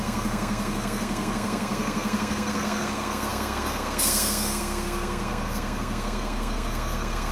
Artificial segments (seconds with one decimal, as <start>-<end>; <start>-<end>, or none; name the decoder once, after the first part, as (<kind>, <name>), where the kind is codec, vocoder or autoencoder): 0.0-7.3 (codec, SNAC)